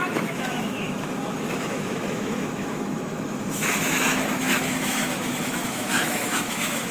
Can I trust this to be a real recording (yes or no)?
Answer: no